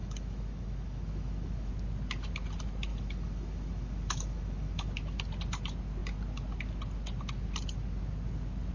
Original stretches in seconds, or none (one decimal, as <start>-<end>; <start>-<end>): 1.7-2.9; 4.9-8.7